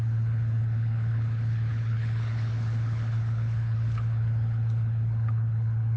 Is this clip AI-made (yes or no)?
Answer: yes